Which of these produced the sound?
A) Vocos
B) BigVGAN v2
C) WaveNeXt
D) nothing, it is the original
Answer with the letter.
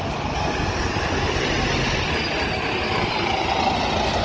D